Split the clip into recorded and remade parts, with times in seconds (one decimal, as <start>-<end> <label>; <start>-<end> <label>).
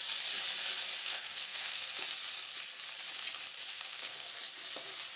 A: 0.0-1.0 recorded; 1.0-1.9 remade; 1.9-3.7 recorded; 3.7-4.3 remade; 4.3-5.2 recorded